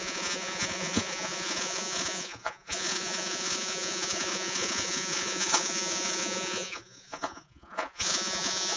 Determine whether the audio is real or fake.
fake